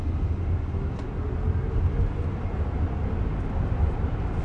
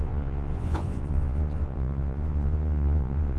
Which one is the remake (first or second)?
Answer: second